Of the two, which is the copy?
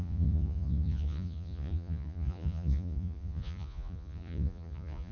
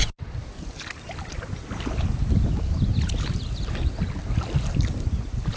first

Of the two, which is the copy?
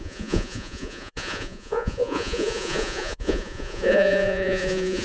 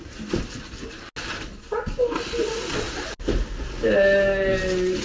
first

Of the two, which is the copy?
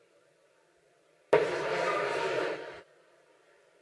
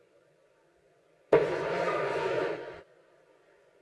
second